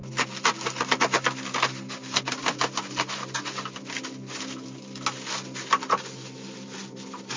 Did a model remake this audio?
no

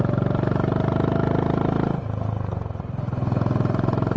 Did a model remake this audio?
no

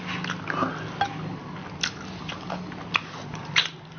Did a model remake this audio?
no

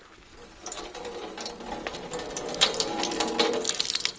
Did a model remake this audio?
no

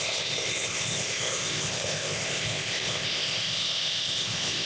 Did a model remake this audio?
yes